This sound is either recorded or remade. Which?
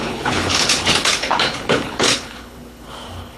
remade